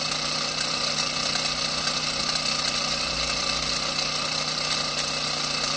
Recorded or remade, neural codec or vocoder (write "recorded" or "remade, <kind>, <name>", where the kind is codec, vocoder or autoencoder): recorded